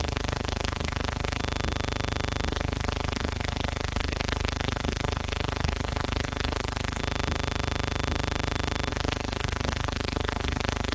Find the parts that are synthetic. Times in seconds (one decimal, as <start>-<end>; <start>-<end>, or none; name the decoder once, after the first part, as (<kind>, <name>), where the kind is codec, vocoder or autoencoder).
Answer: 0.0-1.4 (codec, SNAC); 2.5-7.0; 8.9-10.9